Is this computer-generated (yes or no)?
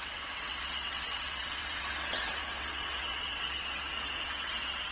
yes